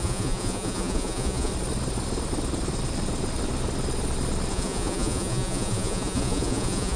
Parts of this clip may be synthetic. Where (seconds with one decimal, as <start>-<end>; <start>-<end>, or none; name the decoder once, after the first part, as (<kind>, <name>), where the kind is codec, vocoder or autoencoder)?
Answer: 0.0-1.5 (vocoder, Vocos); 4.5-7.0